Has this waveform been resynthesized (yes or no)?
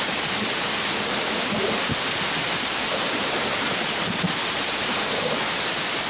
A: no